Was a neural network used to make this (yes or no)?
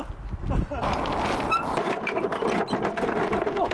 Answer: no